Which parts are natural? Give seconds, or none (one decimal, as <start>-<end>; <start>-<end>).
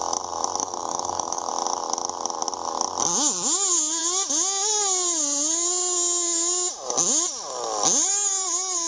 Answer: 0.0-0.6; 1.5-8.9